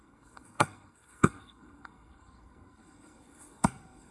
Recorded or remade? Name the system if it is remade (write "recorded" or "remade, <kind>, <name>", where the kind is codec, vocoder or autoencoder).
remade, codec, SNAC